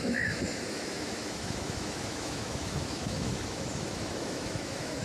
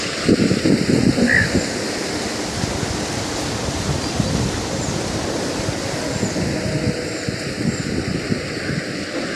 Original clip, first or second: second